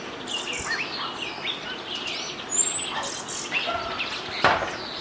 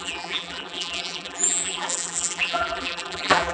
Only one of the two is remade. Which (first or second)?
second